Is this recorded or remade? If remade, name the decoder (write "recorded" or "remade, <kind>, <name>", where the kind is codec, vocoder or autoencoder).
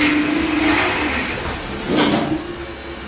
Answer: recorded